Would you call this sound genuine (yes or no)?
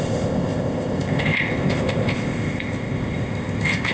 no